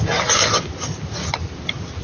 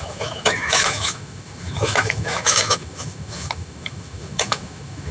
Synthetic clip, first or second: second